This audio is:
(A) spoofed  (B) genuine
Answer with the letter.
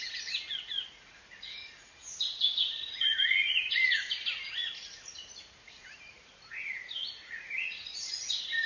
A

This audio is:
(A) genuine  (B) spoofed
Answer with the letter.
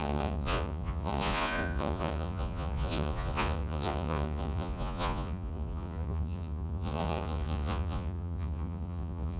B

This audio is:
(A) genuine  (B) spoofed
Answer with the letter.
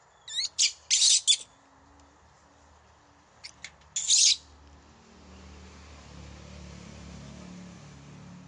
A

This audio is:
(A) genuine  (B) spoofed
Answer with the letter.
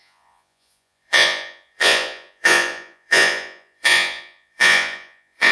B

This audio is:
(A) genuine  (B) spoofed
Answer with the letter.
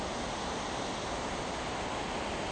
A